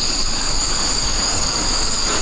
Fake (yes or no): yes